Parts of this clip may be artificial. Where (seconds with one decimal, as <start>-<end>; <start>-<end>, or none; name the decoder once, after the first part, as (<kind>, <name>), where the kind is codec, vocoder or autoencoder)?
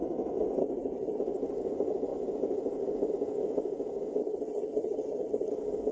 0.6-1.2 (codec, HILCodec); 4.2-5.5